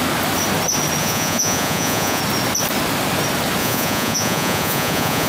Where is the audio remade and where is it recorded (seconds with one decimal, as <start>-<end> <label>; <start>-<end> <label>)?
0.0-1.0 recorded; 1.0-2.2 remade; 2.2-3.6 recorded; 3.6-5.3 remade